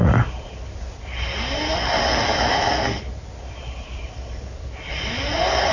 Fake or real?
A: real